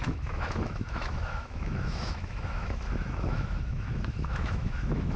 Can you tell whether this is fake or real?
fake